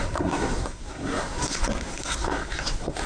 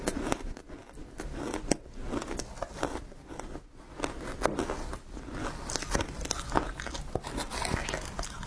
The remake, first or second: first